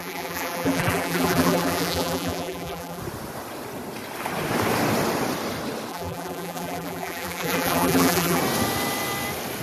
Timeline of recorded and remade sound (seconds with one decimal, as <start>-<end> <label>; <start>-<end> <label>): 0.0-3.0 remade; 3.0-5.9 recorded; 5.9-8.4 remade; 8.4-9.6 recorded